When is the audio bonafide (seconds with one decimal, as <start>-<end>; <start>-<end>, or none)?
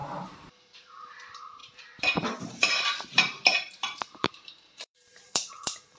none